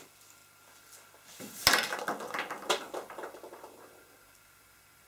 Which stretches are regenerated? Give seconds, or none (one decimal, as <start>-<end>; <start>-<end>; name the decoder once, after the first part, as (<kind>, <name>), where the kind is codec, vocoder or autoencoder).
none